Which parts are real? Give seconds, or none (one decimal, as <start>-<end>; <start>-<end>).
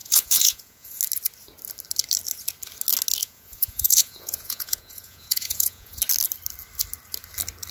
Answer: 1.0-3.2; 6.0-7.7